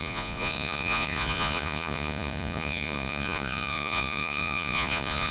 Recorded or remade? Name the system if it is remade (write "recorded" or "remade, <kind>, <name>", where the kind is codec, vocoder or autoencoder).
remade, vocoder, Vocos